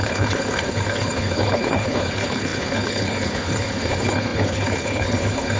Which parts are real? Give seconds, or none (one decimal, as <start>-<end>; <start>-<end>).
none